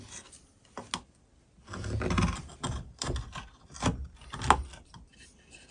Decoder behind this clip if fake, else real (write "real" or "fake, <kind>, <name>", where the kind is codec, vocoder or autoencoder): real